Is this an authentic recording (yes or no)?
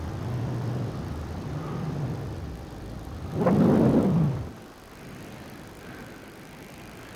yes